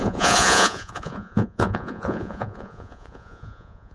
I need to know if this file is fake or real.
fake